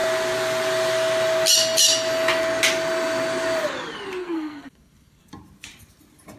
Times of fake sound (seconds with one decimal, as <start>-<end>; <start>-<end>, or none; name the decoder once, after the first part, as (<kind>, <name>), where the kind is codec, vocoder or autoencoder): 4.2-5.3 (codec, SNAC)

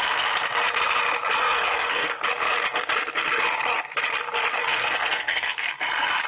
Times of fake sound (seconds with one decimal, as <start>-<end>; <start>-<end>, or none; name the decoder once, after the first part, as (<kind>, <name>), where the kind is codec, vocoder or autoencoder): 1.4-2.2 (codec, SNAC); 4.5-5.7

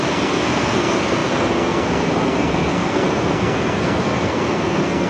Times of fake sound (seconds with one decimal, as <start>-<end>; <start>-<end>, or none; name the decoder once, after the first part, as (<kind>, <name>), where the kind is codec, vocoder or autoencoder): 0.0-5.1 (codec, SNAC)

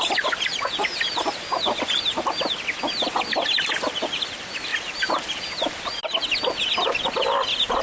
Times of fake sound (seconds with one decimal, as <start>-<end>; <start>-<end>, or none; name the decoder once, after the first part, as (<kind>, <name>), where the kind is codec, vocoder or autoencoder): none

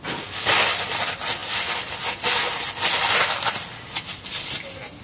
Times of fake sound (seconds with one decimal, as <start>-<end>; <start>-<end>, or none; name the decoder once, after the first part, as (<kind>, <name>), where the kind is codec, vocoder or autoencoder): none